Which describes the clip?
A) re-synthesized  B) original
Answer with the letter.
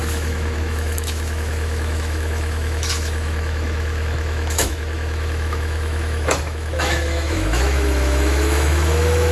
A